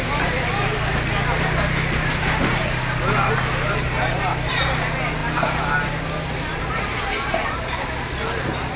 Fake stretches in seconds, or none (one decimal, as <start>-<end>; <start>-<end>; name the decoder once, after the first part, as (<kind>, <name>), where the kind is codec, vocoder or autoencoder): none